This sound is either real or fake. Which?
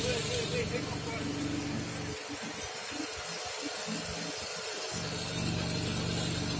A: real